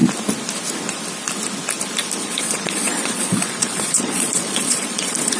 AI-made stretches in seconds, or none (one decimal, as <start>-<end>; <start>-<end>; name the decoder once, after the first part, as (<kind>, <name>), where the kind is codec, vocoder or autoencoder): 2.2-5.4 (vocoder, Vocos)